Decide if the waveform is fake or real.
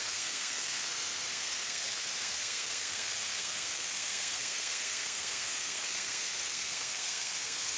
fake